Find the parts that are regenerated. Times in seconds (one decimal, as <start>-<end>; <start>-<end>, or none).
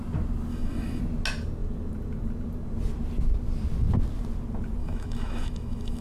0.5-1.0; 4.8-6.0